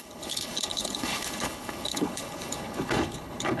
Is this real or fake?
fake